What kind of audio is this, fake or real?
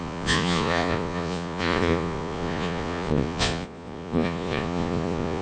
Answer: fake